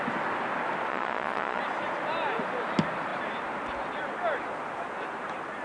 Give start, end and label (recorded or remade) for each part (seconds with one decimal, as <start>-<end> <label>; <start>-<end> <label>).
0.0-0.9 recorded; 0.9-1.6 remade; 1.6-5.6 recorded